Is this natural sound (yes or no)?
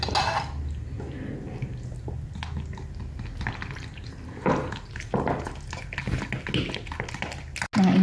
yes